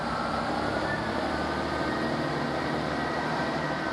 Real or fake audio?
fake